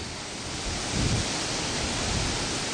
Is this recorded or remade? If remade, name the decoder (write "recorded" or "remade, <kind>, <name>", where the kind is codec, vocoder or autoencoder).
recorded